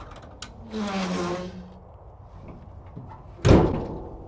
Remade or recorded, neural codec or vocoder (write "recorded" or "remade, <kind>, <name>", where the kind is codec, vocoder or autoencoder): recorded